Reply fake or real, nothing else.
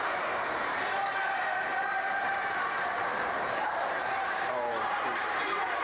fake